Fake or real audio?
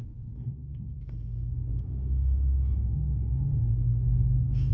fake